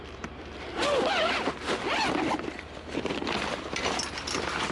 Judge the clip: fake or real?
real